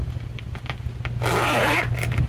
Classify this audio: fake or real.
real